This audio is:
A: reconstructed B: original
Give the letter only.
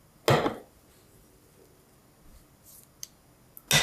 B